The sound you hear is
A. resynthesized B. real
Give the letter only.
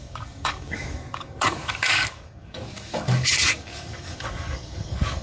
A